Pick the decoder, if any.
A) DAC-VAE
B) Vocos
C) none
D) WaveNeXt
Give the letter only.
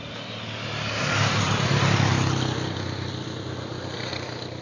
C